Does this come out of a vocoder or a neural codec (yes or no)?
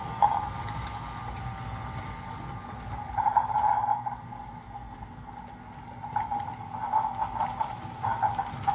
no